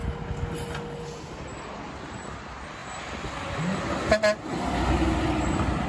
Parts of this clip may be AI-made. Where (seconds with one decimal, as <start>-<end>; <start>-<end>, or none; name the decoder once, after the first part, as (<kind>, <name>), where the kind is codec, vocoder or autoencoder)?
none